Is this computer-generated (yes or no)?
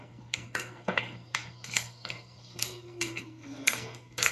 yes